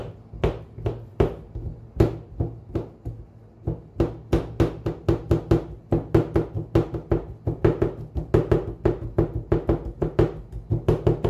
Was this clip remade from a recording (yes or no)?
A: no